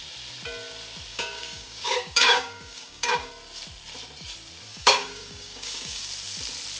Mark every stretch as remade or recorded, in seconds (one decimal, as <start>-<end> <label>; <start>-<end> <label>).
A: 0.0-1.1 recorded; 1.1-3.3 remade; 3.3-4.7 recorded; 4.7-6.1 remade; 6.1-6.8 recorded